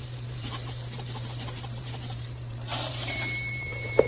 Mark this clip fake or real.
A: fake